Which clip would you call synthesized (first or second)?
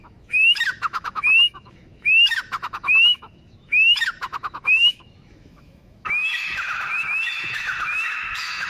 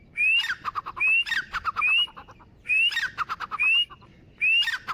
first